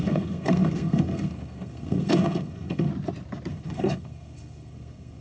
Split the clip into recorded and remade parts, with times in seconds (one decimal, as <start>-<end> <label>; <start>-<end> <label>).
0.0-2.9 remade; 2.9-3.5 recorded; 3.5-5.2 remade